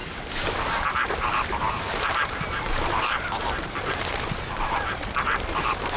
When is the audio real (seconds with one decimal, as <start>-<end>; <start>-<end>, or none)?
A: none